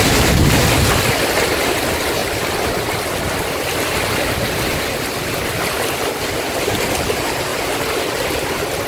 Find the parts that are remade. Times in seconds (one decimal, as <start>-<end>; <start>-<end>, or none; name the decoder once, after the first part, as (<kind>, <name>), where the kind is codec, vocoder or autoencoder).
7.5-8.5 (vocoder, BigVGAN v2)